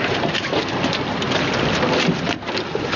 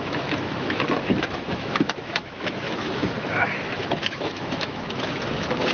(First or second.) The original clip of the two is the first